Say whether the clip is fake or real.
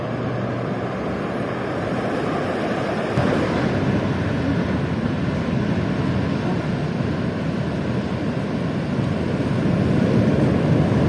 real